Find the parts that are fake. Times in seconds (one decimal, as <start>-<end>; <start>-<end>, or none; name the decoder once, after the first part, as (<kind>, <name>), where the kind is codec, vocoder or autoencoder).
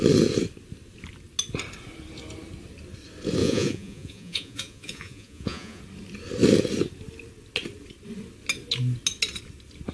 3.4-5.8 (vocoder, Vocos)